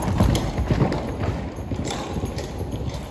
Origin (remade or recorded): recorded